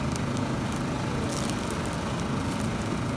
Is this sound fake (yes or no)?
no